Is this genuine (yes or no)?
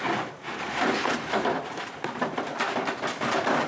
no